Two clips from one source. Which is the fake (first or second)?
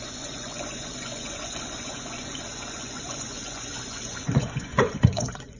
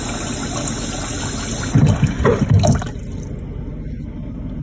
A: first